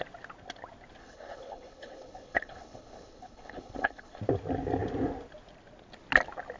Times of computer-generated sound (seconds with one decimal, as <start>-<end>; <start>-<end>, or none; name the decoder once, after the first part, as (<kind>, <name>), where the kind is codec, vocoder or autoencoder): 1.0-4.2 (codec, HILCodec)